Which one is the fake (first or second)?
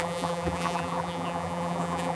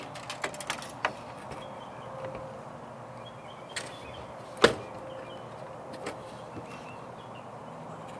first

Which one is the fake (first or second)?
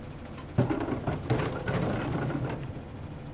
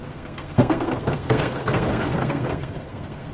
second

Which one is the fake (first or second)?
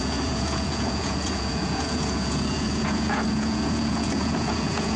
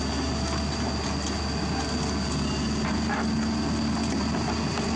first